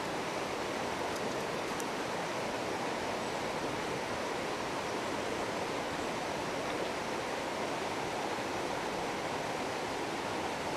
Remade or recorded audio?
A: recorded